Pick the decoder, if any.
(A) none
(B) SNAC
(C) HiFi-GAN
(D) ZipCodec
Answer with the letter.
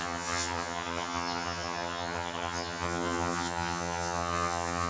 C